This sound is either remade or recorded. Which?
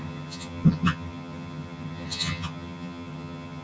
remade